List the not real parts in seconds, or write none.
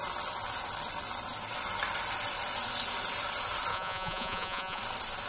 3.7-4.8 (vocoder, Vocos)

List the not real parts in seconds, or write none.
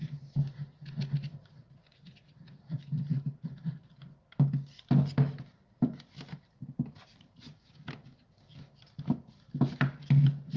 1.9-3.8 (vocoder, BigVGAN v2); 6.6-7.7